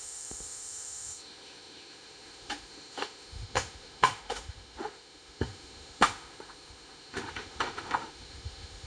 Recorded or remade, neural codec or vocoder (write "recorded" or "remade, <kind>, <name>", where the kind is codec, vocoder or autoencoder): remade, autoencoder, DAC-VAE